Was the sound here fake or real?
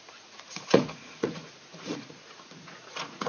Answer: fake